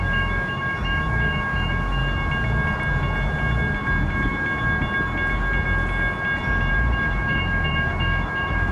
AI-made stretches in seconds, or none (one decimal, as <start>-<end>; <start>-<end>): 0.0-2.0; 6.7-8.7